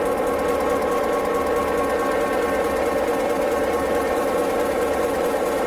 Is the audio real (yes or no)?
yes